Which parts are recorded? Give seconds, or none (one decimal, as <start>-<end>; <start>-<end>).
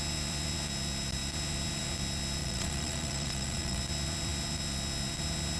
0.0-2.4; 3.8-5.6